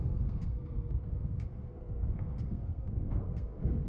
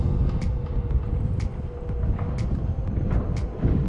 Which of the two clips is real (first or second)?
second